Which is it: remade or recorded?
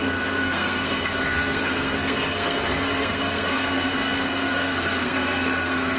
remade